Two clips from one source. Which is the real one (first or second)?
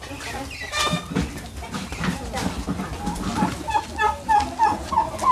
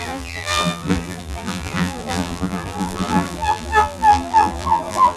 first